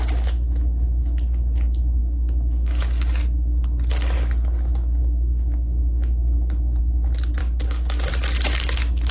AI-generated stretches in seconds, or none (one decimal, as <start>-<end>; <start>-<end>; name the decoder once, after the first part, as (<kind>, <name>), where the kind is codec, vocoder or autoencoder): 2.0-2.8 (codec, DAC); 5.0-6.8; 7.4-8.1